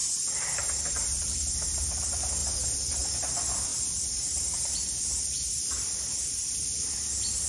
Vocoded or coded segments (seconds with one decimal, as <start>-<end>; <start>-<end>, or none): 0.0-1.5; 2.4-3.0; 3.7-6.5

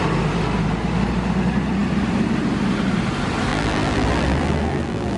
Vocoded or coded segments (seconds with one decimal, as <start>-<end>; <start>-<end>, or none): 3.5-5.2

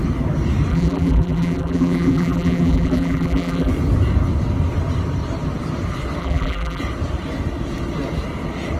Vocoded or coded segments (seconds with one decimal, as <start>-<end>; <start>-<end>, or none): 0.7-3.7; 6.2-6.8